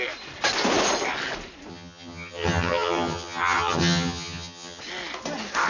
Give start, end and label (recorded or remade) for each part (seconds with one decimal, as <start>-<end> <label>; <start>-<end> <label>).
0.0-1.7 recorded; 1.7-4.8 remade; 4.8-5.7 recorded